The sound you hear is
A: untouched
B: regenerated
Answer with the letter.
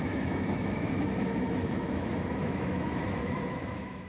B